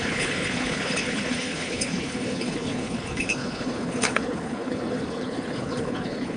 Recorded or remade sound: remade